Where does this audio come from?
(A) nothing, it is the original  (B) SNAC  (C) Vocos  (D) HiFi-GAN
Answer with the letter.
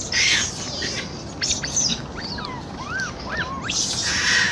A